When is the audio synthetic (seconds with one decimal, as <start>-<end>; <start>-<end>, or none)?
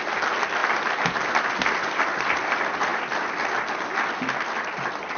none